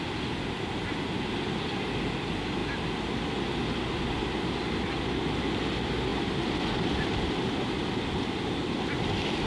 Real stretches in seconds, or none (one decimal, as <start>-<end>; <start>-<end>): 0.0-9.5